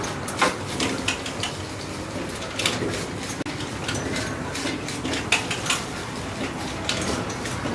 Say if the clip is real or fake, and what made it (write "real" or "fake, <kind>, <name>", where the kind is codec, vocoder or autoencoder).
real